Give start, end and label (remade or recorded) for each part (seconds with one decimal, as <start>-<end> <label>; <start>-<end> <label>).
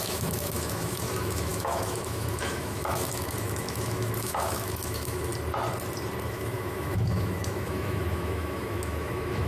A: 0.0-5.3 remade; 5.3-6.3 recorded; 6.3-9.5 remade